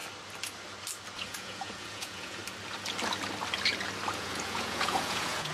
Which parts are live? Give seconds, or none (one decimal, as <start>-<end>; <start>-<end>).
0.0-1.1; 2.4-4.1